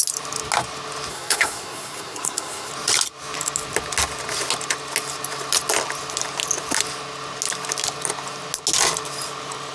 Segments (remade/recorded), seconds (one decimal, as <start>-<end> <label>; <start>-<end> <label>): 0.0-1.1 recorded; 1.1-2.7 remade; 2.7-9.7 recorded